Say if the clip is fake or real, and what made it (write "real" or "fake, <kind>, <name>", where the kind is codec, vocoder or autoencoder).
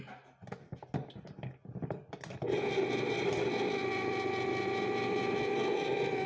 real